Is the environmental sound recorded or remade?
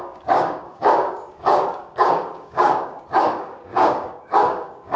remade